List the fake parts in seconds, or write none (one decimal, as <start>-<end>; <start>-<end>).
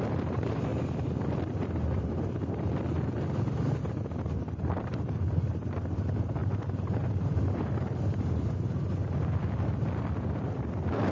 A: 0.0-0.7; 3.8-9.0